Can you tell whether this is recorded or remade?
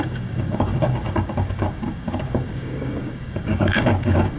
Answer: remade